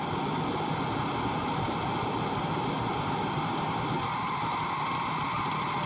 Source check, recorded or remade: recorded